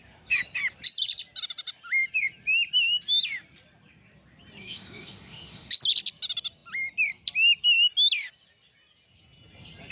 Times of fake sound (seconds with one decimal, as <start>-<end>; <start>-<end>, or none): 4.6-5.7